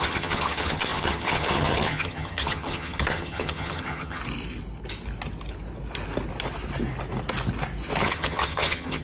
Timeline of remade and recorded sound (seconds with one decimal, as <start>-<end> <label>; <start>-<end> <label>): 0.0-4.2 remade; 4.2-8.0 recorded; 8.0-9.0 remade